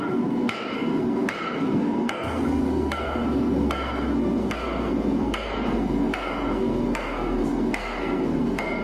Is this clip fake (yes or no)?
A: yes